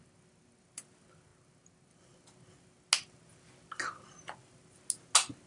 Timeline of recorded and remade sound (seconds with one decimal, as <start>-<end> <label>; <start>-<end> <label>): 0.0-5.5 recorded